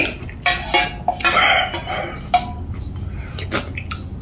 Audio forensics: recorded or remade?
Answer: recorded